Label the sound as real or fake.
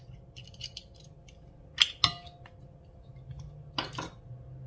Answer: real